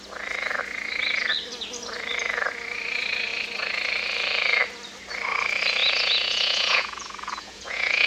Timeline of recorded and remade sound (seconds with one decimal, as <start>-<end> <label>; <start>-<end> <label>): 0.0-5.8 recorded; 5.8-8.1 remade